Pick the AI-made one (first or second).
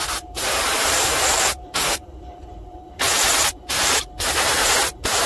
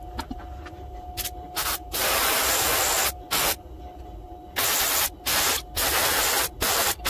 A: first